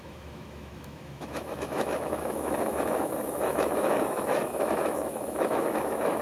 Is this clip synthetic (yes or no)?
yes